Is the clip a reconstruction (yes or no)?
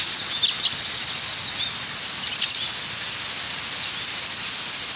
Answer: no